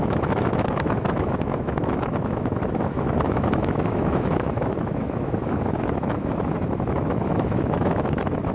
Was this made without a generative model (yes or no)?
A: no